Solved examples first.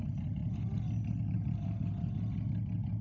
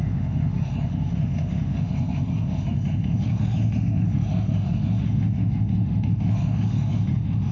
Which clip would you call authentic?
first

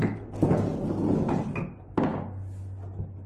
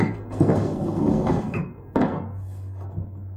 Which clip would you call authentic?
first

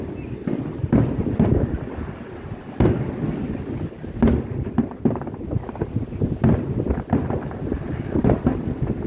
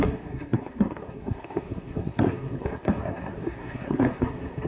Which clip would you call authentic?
first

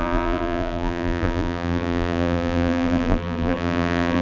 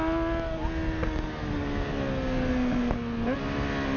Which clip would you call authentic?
second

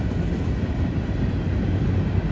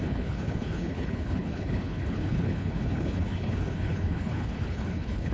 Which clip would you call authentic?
first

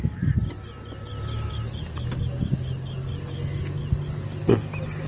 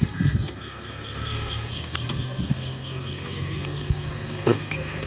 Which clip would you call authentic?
first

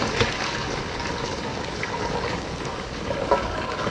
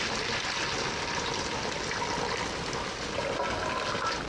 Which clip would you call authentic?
second